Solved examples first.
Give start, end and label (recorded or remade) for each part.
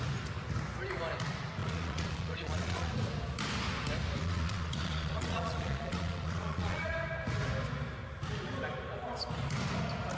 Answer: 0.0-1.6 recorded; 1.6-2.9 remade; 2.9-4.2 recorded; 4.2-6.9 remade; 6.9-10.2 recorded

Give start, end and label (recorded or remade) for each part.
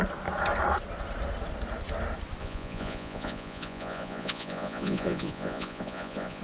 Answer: 0.0-2.4 recorded; 2.4-6.4 remade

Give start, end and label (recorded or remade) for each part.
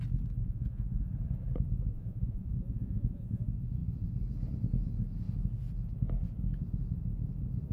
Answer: 0.0-0.4 recorded; 0.4-1.0 remade; 1.0-1.9 recorded; 1.9-3.4 remade; 3.4-7.7 recorded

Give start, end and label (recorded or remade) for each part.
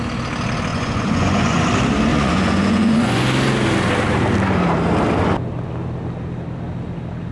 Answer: 0.0-0.7 recorded; 0.7-1.7 remade; 1.7-2.1 recorded; 2.1-3.2 remade; 3.2-7.3 recorded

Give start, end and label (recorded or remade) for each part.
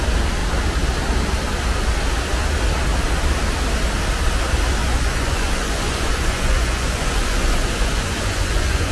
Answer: 0.0-4.8 recorded; 4.8-8.9 remade